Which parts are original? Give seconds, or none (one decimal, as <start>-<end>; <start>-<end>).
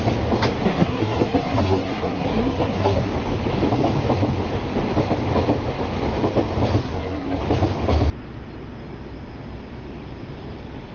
0.0-0.7; 3.1-6.8; 7.4-10.9